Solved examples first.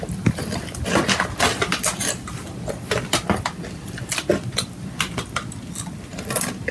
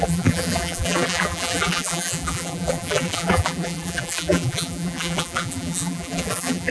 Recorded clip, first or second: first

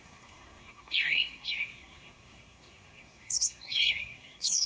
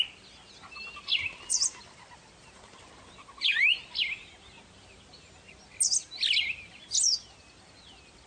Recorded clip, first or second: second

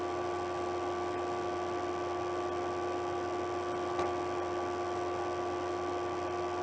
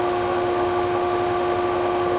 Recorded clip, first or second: first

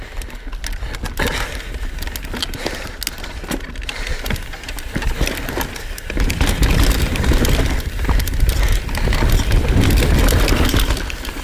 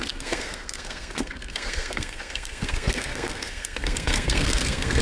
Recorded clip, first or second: first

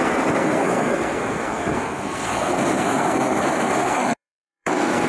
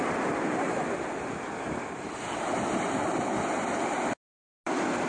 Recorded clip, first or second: second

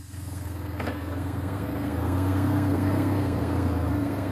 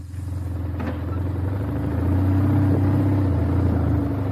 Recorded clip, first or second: second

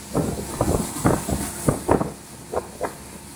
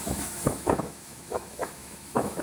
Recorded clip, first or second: first